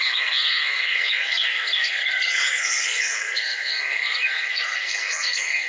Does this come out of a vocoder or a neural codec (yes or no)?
yes